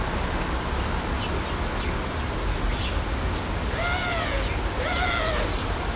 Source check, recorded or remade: recorded